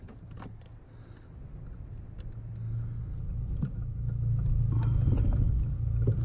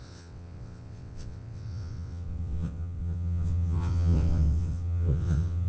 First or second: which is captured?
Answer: first